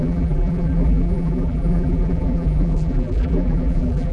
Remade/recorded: remade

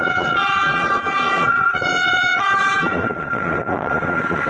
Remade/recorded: remade